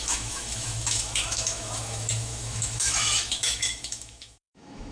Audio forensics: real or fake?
fake